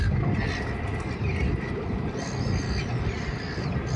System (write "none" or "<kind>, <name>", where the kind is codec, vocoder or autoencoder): none